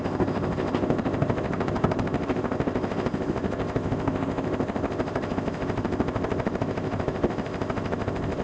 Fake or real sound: fake